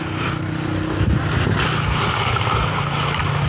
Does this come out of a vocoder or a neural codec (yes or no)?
no